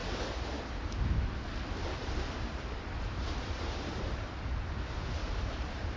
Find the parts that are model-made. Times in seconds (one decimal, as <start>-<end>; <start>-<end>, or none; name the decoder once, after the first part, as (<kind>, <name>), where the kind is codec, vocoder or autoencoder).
0.0-0.6 (vocoder, BigVGAN v2); 1.9-4.1; 5.2-6.0

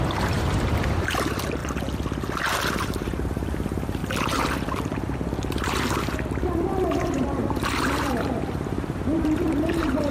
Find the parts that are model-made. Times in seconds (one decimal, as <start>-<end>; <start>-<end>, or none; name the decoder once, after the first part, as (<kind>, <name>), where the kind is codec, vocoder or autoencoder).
0.0-1.6 (vocoder, BigVGAN v2); 2.8-4.0; 7.0-7.4; 8.0-10.1

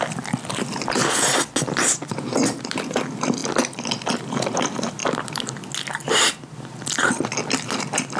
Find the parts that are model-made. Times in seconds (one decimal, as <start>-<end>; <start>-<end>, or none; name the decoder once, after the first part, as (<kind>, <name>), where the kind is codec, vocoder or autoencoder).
0.0-1.0 (vocoder, BigVGAN v2); 2.1-3.4; 4.0-5.0